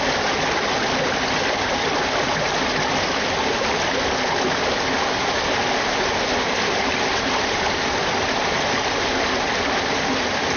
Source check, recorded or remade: recorded